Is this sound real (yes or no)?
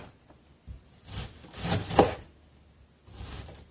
yes